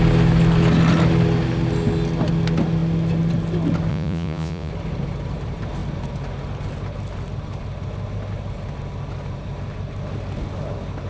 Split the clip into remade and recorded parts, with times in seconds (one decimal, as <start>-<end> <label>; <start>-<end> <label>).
0.0-3.9 recorded; 3.9-4.7 remade; 4.7-11.1 recorded